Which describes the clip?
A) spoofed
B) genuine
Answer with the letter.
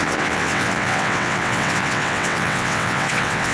A